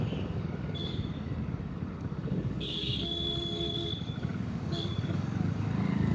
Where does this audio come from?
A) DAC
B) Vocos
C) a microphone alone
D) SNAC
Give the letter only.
A